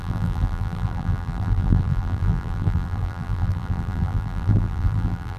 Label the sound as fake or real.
fake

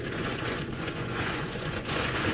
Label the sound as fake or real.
fake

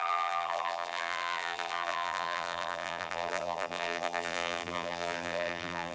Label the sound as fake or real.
fake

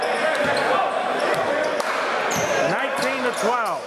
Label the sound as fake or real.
real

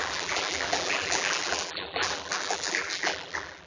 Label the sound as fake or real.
fake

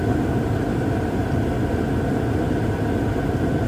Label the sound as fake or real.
real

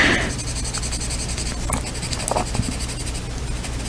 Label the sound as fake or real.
real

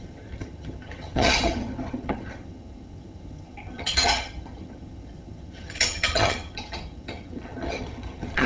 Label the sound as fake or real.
fake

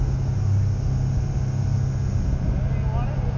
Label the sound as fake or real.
real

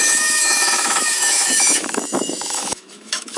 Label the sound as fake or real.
fake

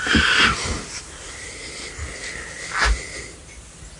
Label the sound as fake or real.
real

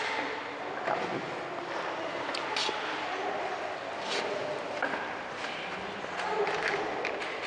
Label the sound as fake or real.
real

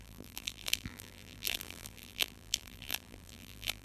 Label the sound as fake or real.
fake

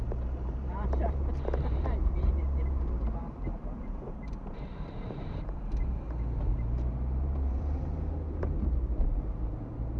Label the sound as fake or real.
fake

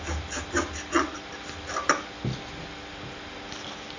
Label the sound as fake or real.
real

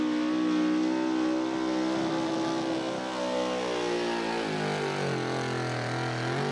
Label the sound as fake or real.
real